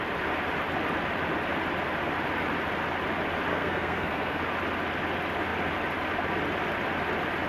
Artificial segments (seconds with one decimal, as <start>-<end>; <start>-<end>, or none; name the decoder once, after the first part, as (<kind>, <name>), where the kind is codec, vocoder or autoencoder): 3.5-4.4 (codec, SNAC)